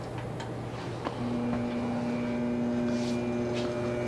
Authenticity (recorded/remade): recorded